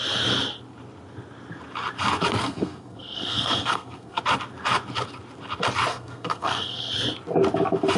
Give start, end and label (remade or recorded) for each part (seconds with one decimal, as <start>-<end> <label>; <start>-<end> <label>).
0.0-2.4 recorded; 2.4-4.2 remade; 4.2-5.9 recorded; 5.9-6.9 remade; 6.9-8.0 recorded